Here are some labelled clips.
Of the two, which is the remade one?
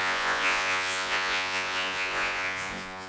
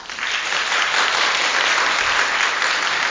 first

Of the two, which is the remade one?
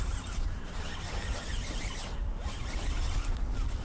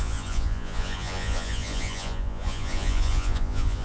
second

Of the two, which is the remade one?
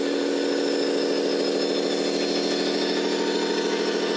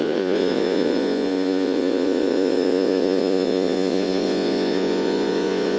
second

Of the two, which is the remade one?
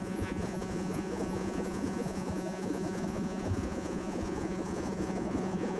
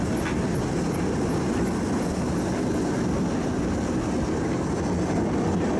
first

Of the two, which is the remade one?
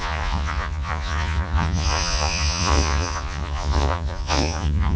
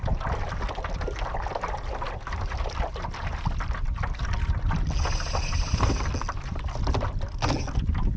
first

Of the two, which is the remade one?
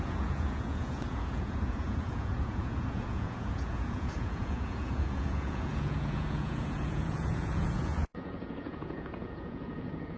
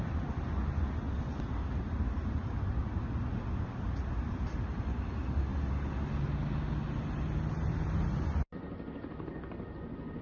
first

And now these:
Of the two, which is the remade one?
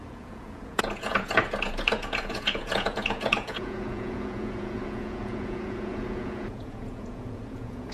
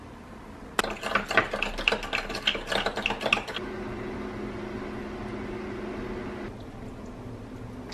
first